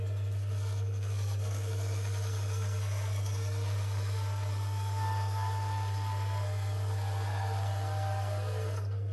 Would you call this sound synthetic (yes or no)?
yes